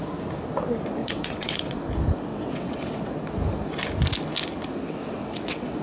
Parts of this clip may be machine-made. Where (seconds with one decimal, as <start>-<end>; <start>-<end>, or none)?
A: 1.0-1.8; 2.3-3.1; 4.8-5.8